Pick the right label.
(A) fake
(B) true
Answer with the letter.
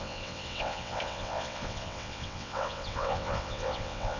A